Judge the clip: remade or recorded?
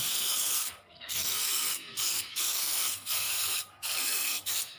remade